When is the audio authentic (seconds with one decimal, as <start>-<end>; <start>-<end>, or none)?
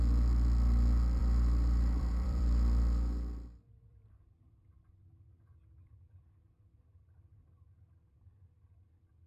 0.0-1.2; 4.6-9.3